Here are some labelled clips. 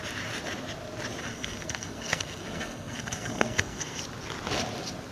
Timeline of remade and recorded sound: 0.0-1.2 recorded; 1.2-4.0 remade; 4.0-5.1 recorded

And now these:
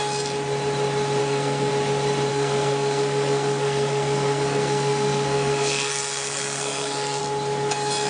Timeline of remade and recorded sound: 0.0-1.2 recorded; 1.2-1.7 remade; 1.7-2.3 recorded; 2.3-7.2 remade; 7.2-8.1 recorded

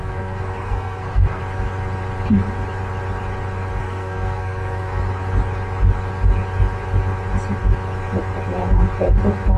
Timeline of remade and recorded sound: 0.0-1.4 remade; 1.4-3.8 recorded; 3.8-5.0 remade; 5.0-9.6 recorded

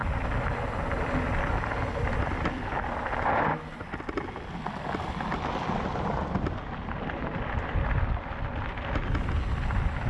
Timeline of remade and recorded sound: 0.0-10.1 recorded